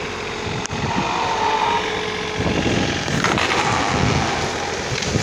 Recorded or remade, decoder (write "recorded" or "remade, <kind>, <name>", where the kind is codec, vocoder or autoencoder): recorded